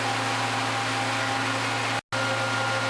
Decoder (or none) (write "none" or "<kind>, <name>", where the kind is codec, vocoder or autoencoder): none